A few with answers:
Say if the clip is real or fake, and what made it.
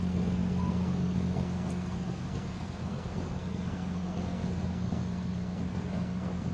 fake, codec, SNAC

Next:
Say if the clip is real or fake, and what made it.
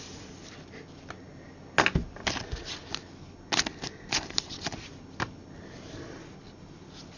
real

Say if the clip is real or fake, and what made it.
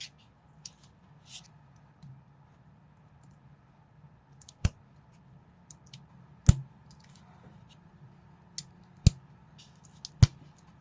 real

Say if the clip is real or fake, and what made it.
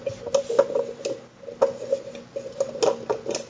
real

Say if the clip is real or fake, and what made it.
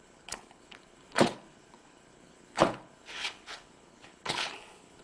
fake, codec, HILCodec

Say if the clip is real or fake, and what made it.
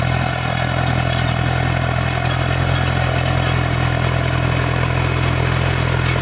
real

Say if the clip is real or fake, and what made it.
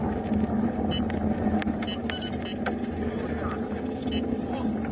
real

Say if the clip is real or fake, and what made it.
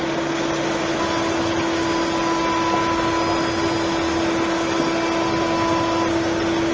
real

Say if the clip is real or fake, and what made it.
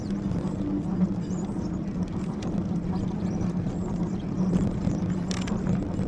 real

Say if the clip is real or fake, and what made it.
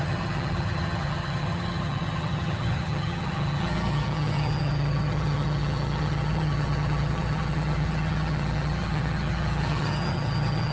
fake, vocoder, HiFi-GAN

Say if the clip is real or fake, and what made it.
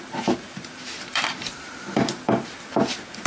fake, vocoder, BigVGAN v2